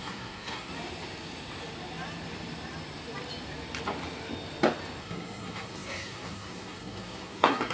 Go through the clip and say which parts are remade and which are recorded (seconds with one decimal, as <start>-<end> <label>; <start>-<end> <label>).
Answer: 0.0-0.7 remade; 0.7-5.0 recorded; 5.0-7.7 remade